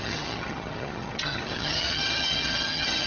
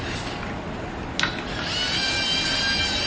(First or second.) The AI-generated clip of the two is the first